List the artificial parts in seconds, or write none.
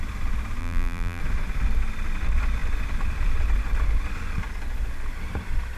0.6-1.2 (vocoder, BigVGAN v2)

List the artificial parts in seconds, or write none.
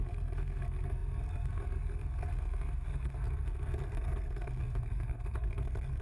0.0-6.0 (codec, SNAC)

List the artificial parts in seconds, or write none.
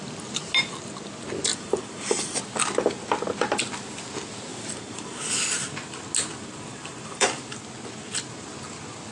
1.5-2.4 (vocoder, BigVGAN v2); 4.5-5.2; 6.7-7.4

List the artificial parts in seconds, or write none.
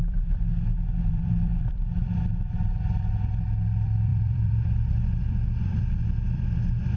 0.0-0.5 (vocoder, BigVGAN v2); 1.1-7.0